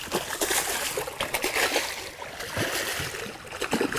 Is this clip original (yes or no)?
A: yes